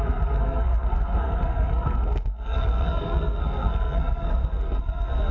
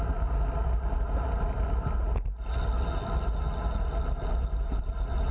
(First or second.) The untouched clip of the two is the second